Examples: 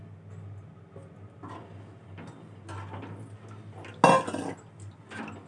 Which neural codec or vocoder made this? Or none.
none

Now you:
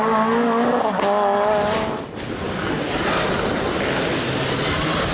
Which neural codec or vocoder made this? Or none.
none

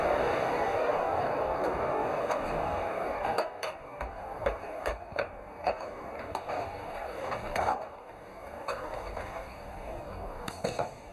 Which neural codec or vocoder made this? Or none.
codec, DAC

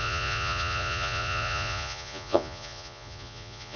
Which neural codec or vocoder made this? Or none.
vocoder, Vocos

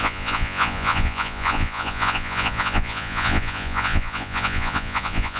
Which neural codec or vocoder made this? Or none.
vocoder, Vocos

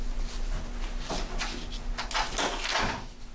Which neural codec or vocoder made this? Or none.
none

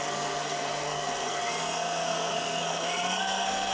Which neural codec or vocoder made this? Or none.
codec, SNAC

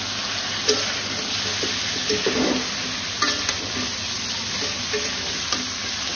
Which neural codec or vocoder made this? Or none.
none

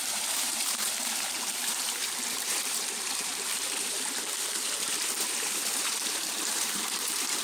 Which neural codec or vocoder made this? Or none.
vocoder, BigVGAN v2